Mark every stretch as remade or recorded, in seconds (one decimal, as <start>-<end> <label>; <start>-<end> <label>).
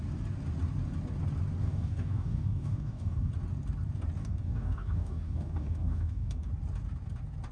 0.0-1.6 recorded; 1.6-3.3 remade; 3.3-4.2 recorded; 4.2-6.5 remade; 6.5-7.5 recorded